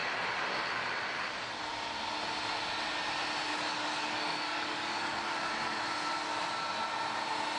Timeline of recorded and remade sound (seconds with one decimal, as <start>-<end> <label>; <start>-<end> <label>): 0.0-3.5 recorded; 3.5-5.5 remade; 5.5-7.6 recorded